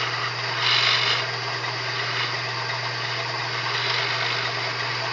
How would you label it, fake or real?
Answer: real